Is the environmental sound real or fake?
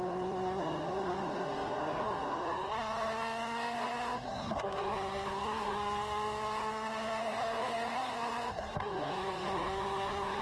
fake